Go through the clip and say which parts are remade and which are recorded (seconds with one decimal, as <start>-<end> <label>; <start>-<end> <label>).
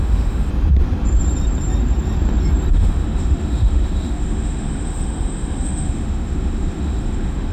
0.0-0.5 remade; 0.5-2.7 recorded; 2.7-7.5 remade